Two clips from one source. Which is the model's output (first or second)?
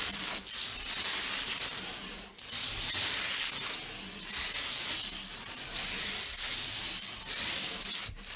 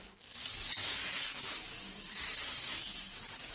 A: second